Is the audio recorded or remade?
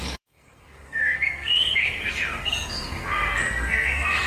remade